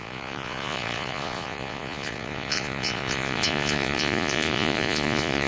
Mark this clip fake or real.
fake